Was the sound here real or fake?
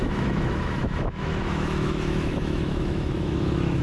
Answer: fake